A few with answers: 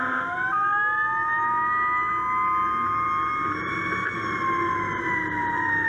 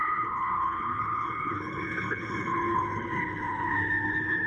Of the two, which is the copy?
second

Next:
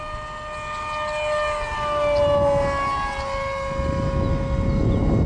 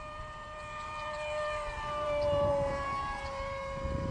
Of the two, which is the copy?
second